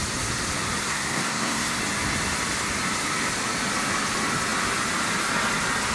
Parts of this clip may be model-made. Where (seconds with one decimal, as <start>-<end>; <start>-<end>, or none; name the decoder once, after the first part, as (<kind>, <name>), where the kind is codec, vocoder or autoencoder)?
0.8-1.8 (codec, SNAC)